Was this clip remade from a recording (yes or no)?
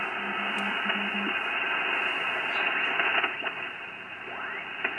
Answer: no